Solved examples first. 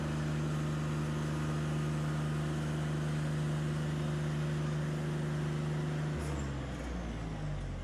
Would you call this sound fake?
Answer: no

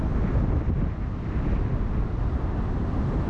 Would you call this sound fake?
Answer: no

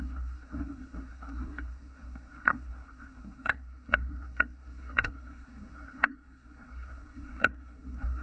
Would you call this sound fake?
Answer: yes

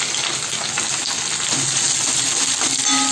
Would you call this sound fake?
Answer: no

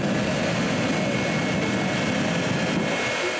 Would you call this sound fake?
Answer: no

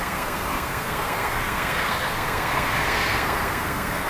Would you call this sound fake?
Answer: yes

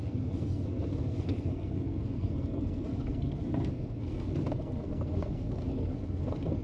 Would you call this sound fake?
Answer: yes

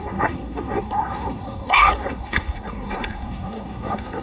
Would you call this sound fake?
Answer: yes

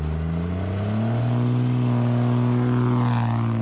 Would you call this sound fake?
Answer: no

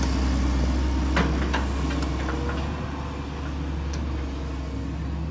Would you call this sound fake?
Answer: no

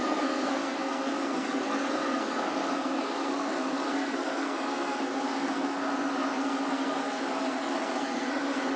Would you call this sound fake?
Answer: yes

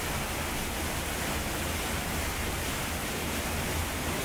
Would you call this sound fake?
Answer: no